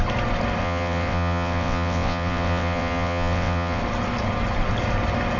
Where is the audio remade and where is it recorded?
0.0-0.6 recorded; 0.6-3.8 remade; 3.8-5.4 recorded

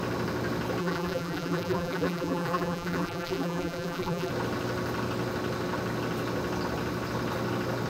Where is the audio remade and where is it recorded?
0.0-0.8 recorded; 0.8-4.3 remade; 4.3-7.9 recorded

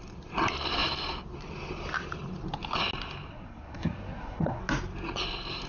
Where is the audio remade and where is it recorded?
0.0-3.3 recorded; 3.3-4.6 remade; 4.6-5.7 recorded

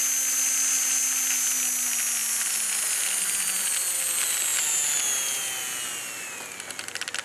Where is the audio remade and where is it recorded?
0.0-7.2 recorded

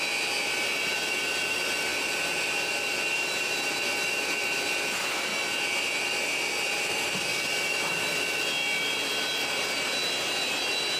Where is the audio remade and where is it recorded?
0.0-5.3 remade; 5.3-6.0 recorded; 6.0-7.3 remade; 7.3-7.9 recorded; 7.9-11.0 remade